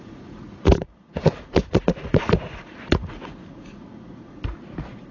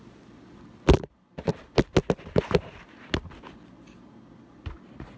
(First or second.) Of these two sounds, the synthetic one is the first